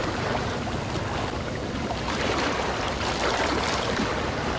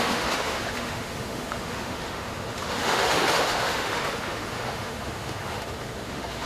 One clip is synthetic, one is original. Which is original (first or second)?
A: first